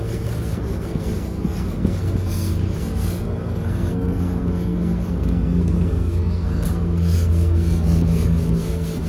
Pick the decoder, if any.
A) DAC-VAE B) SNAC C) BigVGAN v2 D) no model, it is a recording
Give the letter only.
B